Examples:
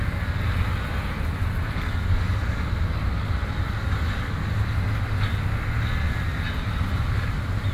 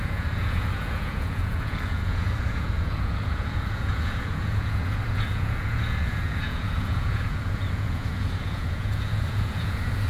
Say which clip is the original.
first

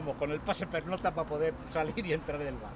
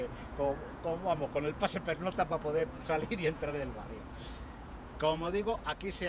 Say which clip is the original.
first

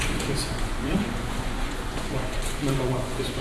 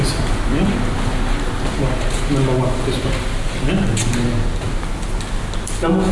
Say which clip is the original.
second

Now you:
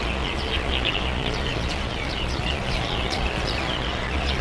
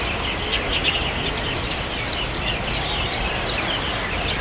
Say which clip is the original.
second